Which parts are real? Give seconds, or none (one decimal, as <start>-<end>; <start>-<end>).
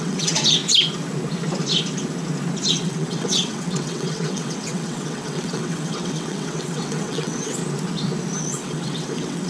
0.6-2.7; 7.6-8.4